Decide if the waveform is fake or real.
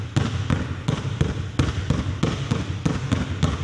real